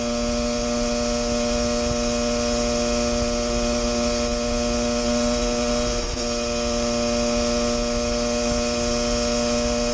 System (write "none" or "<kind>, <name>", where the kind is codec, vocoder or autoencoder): none